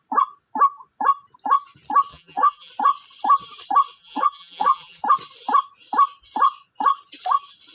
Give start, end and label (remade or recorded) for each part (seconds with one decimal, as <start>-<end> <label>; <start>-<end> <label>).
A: 0.0-2.1 recorded; 2.1-2.7 remade; 2.7-4.0 recorded; 4.0-5.0 remade; 5.0-7.7 recorded